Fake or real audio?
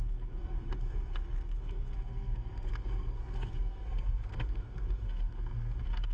fake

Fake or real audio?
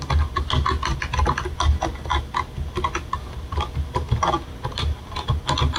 real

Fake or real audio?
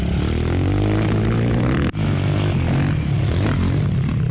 real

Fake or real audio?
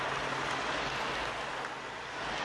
real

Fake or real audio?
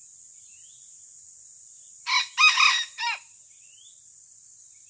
real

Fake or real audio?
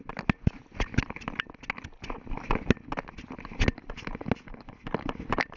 real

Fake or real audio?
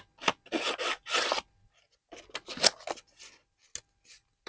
real